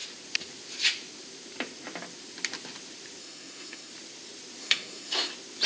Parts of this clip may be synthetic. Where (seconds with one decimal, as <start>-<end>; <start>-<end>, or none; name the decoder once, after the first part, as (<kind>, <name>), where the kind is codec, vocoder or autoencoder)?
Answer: 3.2-3.9 (codec, SNAC); 4.6-5.3